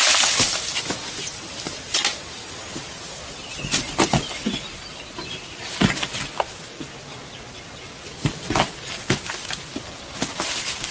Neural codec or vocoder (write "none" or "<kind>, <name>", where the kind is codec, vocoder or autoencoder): none